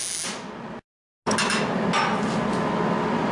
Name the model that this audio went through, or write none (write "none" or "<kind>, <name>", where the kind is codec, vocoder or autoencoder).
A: none